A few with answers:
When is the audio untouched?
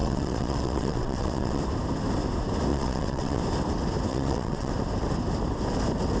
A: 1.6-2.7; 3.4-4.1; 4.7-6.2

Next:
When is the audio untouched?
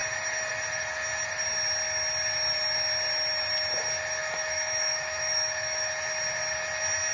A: 0.0-4.2; 5.9-7.1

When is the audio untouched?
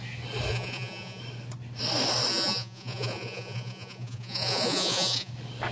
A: 0.0-0.5; 1.2-2.3; 5.3-5.7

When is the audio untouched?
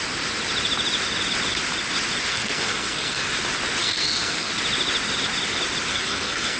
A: 0.0-2.3; 3.3-3.8; 4.5-5.9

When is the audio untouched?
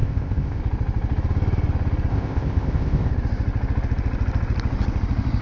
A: 0.6-2.1; 3.1-5.4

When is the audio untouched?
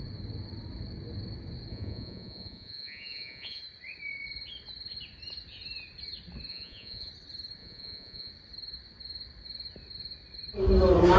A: 0.0-1.7; 3.6-6.5; 7.1-7.6; 8.3-11.2